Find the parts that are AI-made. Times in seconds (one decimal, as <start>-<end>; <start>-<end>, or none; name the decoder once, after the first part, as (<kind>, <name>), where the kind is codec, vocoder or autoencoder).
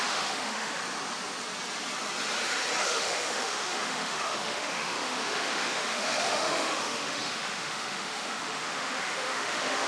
0.0-0.8 (autoencoder, DAC-VAE); 2.8-9.9